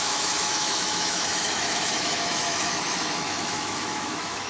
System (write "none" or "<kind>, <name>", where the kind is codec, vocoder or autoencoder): autoencoder, DAC-VAE